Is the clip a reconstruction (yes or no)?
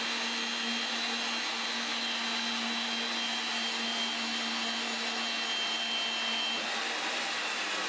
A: no